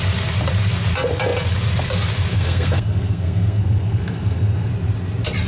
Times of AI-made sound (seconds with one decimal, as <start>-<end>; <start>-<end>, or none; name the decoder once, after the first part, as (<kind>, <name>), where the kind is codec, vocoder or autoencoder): 2.3-4.7 (codec, SNAC)